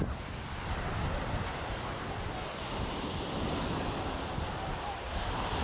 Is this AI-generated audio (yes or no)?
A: no